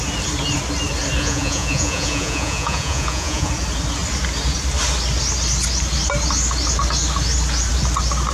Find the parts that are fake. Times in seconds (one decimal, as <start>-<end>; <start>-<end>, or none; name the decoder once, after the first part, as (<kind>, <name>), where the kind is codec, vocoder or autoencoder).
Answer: 1.2-3.5 (vocoder, Vocos)